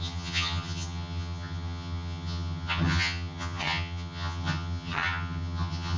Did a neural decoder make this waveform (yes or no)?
yes